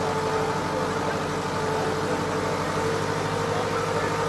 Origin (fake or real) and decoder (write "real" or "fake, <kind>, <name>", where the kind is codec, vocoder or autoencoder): real